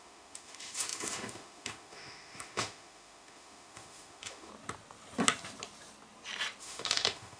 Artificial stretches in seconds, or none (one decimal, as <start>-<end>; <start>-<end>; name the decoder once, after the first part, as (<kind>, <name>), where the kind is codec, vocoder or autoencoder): 0.0-4.5 (autoencoder, DAC-VAE); 6.6-7.4